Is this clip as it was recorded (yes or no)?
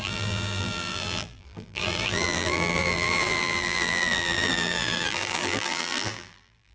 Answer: no